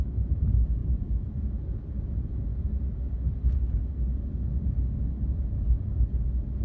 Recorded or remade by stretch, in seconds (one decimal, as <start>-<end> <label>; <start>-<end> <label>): 0.0-0.8 recorded; 0.8-1.7 remade; 1.7-6.6 recorded